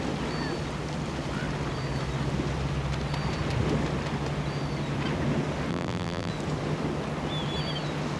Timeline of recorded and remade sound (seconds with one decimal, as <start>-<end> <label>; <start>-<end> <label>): 0.0-5.7 recorded; 5.7-6.3 remade; 6.3-8.2 recorded